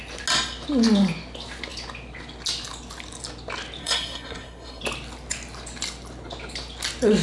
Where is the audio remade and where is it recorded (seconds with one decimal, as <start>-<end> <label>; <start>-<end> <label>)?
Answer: 0.0-3.8 recorded; 3.8-4.8 remade; 4.8-7.2 recorded